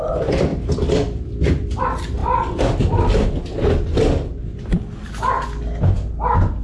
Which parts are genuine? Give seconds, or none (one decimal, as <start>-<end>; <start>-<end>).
0.5-1.8; 2.2-6.1